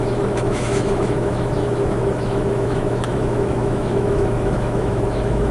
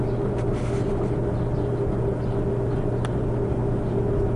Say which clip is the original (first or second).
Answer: second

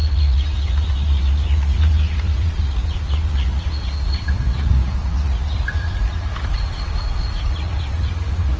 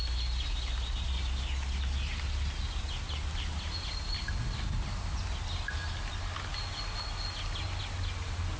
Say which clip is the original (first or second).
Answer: second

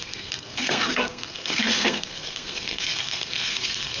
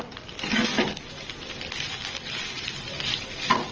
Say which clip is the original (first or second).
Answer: second